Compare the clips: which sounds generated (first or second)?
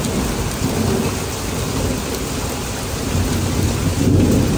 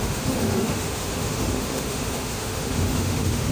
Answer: second